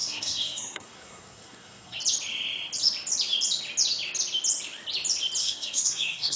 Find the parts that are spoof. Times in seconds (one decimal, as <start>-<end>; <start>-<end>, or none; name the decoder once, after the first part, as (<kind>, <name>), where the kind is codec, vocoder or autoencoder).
0.0-2.0 (codec, SNAC); 5.4-6.4